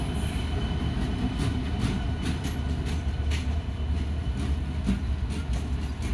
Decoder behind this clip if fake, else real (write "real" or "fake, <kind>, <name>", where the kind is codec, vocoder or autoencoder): real